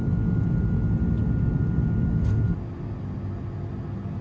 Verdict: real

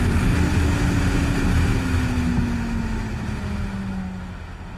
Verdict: real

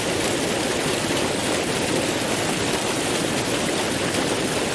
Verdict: real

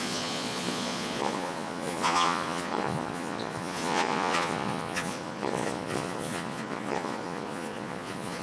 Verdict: fake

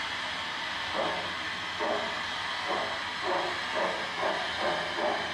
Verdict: real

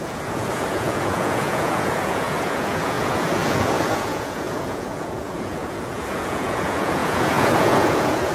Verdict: fake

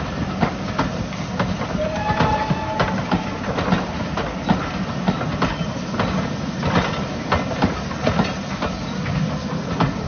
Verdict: real